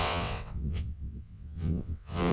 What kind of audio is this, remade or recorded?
remade